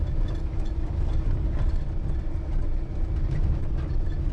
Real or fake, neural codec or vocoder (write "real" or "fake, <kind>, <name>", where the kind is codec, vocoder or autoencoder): real